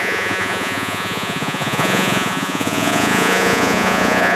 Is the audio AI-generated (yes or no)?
yes